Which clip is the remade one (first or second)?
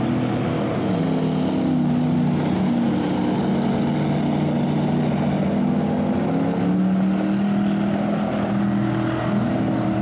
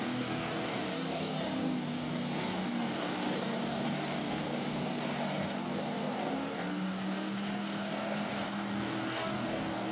second